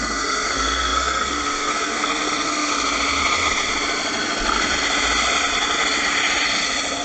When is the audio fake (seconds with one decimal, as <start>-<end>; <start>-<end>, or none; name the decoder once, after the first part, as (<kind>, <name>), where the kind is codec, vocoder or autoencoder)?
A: 0.0-2.7 (codec, SNAC)